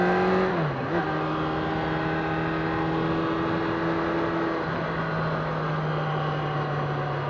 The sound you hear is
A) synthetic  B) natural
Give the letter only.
B